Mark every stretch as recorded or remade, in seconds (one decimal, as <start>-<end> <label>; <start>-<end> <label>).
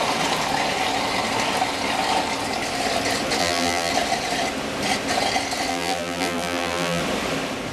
0.0-3.4 recorded; 3.4-3.9 remade; 3.9-5.7 recorded; 5.7-7.0 remade; 7.0-7.7 recorded